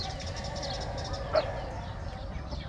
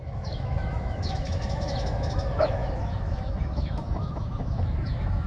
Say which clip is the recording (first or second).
first